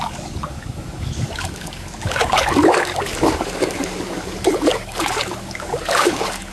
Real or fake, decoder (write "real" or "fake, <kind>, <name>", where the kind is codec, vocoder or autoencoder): fake, codec, DAC